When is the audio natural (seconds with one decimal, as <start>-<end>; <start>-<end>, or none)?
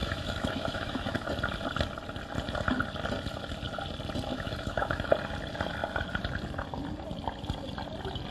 1.3-4.3; 5.1-8.3